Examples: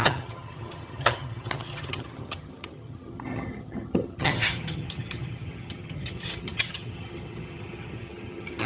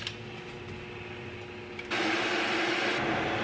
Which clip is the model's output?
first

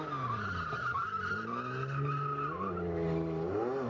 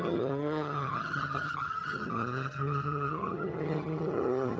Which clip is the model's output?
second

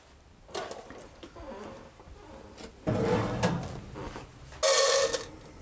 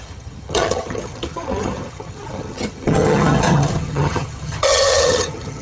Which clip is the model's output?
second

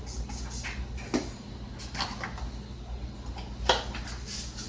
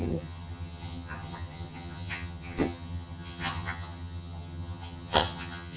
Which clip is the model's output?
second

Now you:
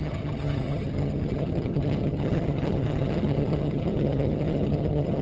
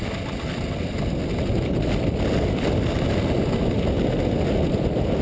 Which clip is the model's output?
first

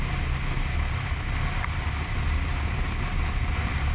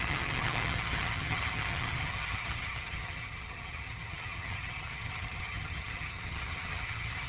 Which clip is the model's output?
second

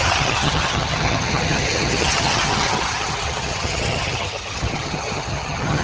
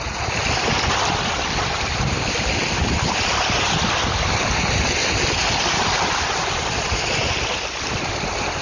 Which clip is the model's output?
first